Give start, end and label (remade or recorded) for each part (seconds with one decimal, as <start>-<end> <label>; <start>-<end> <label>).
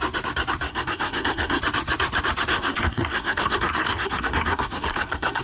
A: 0.0-0.7 recorded; 0.7-1.6 remade; 1.6-2.5 recorded; 2.5-5.4 remade